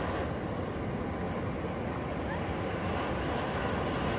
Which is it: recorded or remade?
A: recorded